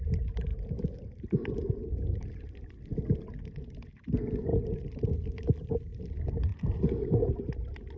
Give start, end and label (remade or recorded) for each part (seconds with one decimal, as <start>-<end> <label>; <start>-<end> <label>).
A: 0.0-8.0 recorded